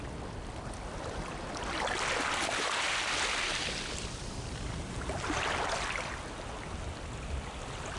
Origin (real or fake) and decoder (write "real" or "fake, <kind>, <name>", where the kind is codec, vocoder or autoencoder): real